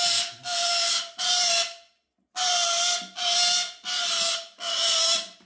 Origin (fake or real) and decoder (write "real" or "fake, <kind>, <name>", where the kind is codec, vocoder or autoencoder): real